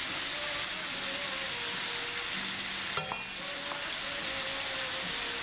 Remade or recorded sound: recorded